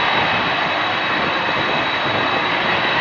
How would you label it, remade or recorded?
recorded